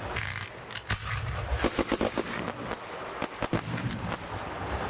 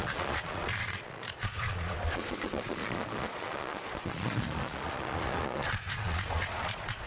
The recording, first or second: first